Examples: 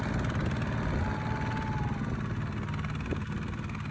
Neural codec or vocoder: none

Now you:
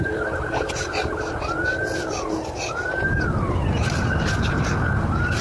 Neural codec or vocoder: none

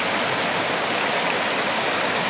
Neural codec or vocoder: none